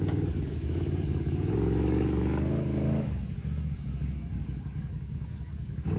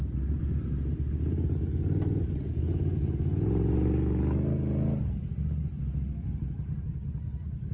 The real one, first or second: second